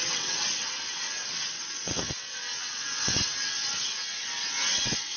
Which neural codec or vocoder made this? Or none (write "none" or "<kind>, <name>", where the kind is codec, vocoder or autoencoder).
vocoder, WaveNeXt